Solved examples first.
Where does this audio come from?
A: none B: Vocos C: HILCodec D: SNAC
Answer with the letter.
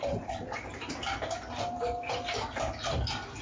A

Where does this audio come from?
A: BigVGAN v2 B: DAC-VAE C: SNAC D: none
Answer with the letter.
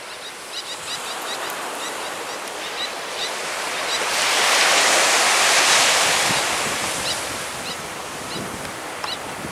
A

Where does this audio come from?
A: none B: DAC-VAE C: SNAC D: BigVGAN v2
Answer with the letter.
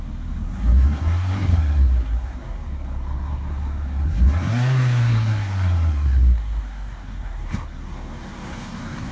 C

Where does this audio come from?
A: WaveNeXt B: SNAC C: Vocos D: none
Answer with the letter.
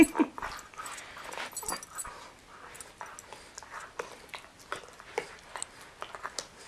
D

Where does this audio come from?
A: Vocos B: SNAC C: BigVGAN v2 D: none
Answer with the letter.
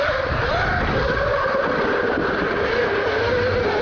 D